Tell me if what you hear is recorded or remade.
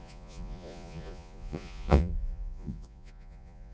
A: remade